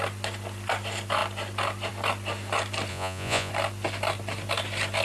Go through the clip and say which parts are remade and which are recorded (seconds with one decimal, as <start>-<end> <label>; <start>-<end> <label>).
0.0-2.9 recorded; 2.9-3.5 remade; 3.5-5.0 recorded